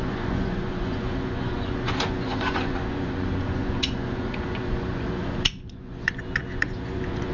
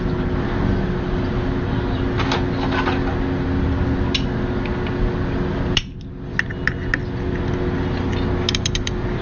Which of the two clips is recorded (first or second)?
second